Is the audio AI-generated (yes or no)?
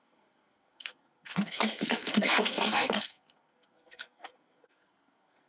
yes